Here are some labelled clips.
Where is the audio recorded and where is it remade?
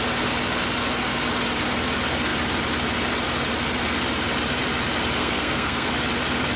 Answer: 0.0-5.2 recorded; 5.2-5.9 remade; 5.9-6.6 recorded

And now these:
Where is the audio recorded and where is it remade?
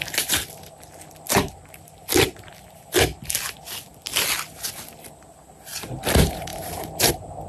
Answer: 0.0-6.5 recorded; 6.5-7.1 remade; 7.1-7.5 recorded